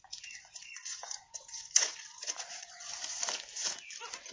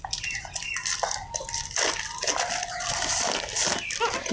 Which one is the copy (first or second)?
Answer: first